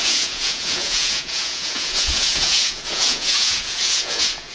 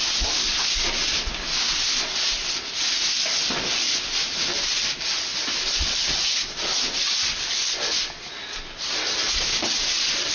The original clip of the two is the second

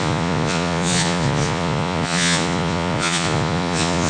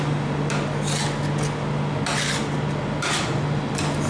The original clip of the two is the second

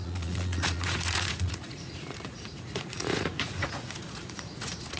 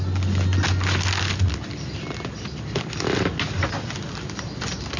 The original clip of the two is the second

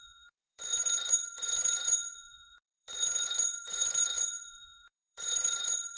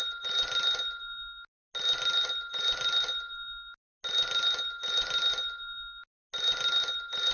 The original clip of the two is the second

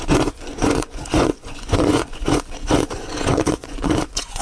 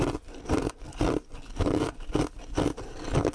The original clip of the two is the second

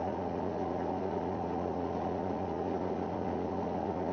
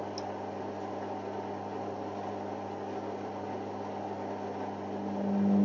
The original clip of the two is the second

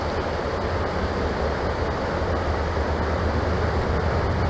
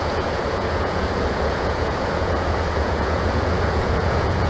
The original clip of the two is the first